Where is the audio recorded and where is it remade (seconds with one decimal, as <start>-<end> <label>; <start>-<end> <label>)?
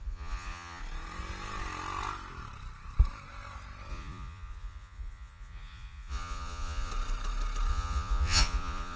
0.0-0.8 remade; 0.8-3.9 recorded; 3.9-6.9 remade; 6.9-7.7 recorded; 7.7-9.0 remade